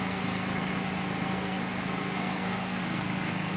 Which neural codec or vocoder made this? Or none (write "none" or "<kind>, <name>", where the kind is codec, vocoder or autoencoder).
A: codec, SNAC